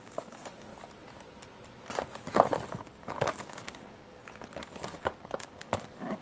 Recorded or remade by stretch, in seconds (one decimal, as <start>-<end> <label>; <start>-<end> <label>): 0.0-0.7 remade; 0.7-2.7 recorded; 2.7-4.2 remade; 4.2-5.0 recorded; 5.0-6.2 remade